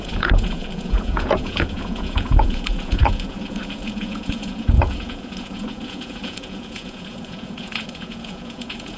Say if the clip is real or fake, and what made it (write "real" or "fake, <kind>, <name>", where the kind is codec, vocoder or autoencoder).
fake, vocoder, Vocos